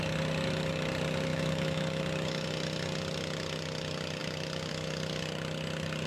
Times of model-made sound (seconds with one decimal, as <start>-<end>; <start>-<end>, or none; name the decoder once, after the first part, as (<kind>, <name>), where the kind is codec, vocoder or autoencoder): 1.3-2.0 (autoencoder, DAC-VAE)